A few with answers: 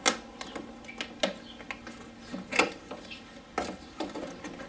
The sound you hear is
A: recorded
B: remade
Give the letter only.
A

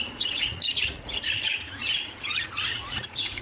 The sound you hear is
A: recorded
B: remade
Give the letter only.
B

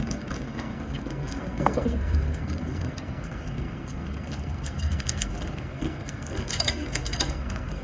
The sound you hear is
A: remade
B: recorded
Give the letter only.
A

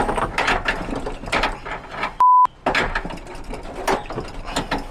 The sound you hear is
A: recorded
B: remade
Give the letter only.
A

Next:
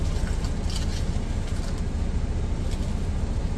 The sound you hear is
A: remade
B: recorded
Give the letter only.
B